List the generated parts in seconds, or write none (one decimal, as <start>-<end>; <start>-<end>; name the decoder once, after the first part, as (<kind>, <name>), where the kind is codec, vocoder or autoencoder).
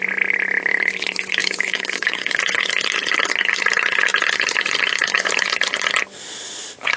1.4-2.4 (codec, DAC)